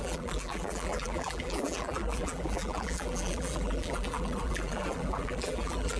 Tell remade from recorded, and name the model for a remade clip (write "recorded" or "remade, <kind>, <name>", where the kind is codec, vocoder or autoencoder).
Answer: remade, vocoder, BigVGAN v2